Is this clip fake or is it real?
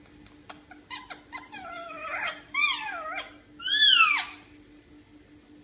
real